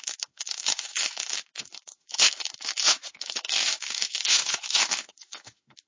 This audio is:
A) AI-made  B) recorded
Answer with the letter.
A